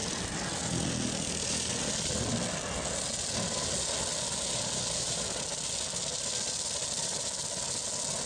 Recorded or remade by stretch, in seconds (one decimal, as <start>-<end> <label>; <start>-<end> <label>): 0.0-8.3 recorded